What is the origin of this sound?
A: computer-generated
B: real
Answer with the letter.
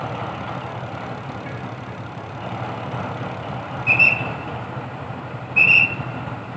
B